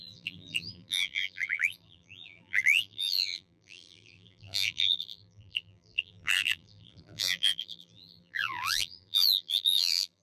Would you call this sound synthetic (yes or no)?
yes